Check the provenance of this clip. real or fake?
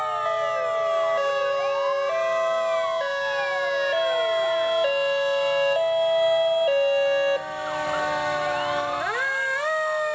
real